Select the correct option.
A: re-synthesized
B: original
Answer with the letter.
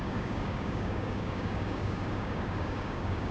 A